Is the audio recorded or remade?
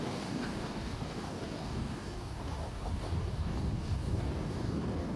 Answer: remade